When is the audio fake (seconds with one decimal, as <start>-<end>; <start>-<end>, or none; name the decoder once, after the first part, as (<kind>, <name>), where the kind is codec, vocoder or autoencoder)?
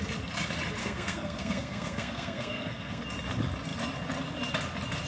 0.8-3.0 (codec, SNAC)